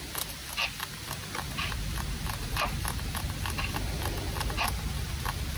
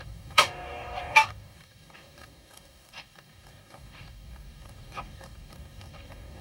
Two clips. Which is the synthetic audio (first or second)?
second